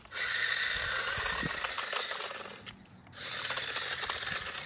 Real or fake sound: real